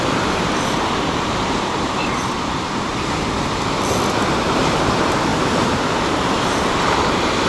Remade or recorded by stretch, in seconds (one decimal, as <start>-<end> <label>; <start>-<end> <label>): 0.0-2.9 remade; 2.9-4.6 recorded; 4.6-7.5 remade